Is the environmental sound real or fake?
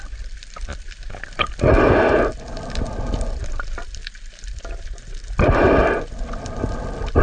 real